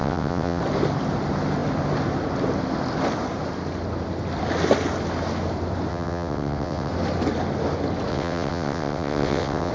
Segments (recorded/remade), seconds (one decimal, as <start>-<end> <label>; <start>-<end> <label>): 0.0-0.6 remade; 0.6-5.9 recorded; 5.9-6.9 remade; 6.9-8.1 recorded; 8.1-9.7 remade

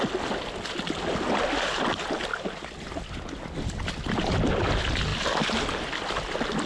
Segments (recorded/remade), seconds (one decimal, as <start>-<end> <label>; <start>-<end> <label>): 0.0-6.7 recorded

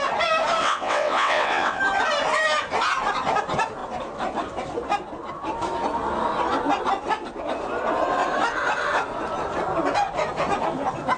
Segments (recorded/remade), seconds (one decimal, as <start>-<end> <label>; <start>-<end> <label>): 0.0-0.6 recorded; 0.6-1.8 remade; 1.8-11.2 recorded

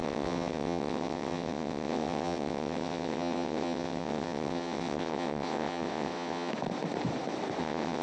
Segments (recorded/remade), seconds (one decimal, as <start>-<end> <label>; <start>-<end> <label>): 0.0-6.5 remade; 6.5-7.6 recorded; 7.6-8.0 remade

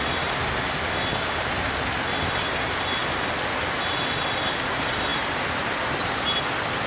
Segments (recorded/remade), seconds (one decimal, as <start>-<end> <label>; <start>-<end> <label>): 0.0-6.9 recorded

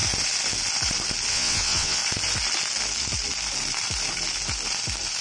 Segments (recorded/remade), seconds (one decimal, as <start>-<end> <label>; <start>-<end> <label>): 0.0-1.3 recorded; 1.3-2.0 remade; 2.0-5.2 recorded

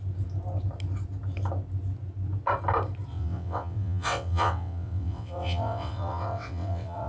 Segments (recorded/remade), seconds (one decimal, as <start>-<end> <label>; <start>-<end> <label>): 0.0-3.1 recorded; 3.1-7.1 remade

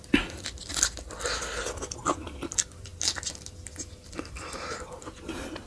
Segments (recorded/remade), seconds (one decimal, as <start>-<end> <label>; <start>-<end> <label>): 0.0-5.7 recorded